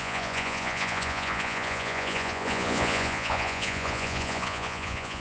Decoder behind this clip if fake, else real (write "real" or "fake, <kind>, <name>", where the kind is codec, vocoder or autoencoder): fake, vocoder, Vocos